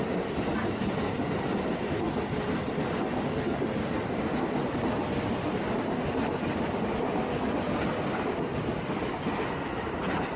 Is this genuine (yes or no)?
yes